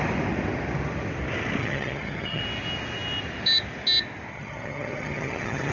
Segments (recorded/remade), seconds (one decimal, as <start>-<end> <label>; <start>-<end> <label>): 0.0-1.6 recorded; 1.6-2.4 remade; 2.4-4.3 recorded; 4.3-5.7 remade